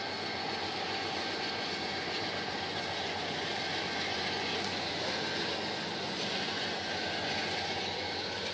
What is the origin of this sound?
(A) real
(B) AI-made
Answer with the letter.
B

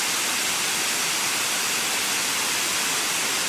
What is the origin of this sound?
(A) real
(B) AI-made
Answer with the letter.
A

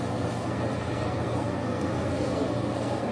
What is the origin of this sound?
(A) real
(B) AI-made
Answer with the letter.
B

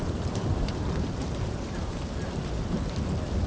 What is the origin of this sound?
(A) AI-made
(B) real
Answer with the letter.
A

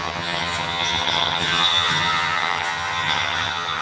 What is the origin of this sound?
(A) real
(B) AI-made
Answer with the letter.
B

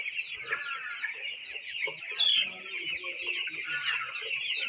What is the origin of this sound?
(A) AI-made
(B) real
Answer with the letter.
B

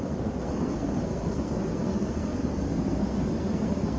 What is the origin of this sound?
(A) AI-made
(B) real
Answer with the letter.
A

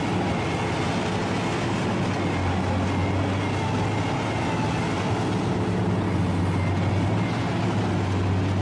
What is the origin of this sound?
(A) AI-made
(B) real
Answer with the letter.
B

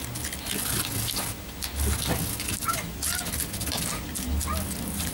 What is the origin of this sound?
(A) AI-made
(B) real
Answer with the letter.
B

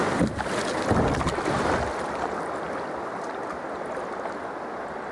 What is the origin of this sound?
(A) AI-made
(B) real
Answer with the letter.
B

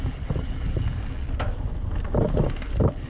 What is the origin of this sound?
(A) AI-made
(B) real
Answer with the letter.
B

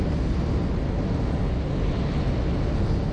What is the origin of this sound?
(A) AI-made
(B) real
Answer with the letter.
B